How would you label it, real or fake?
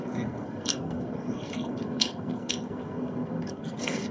fake